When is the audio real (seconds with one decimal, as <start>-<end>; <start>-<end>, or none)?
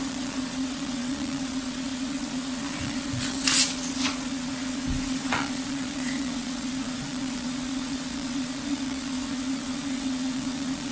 none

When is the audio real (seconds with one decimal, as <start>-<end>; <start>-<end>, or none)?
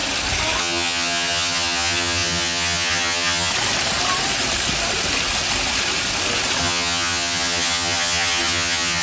0.0-0.6; 3.5-6.6